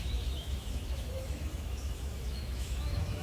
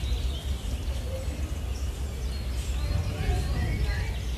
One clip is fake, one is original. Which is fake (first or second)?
first